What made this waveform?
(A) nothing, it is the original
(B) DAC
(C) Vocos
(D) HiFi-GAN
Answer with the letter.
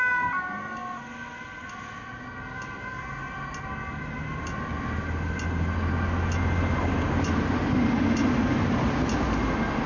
A